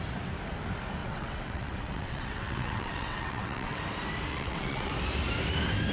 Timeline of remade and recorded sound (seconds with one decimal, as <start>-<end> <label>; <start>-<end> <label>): 0.0-1.0 recorded; 1.0-3.8 remade; 3.8-4.3 recorded; 4.3-4.9 remade; 4.9-5.9 recorded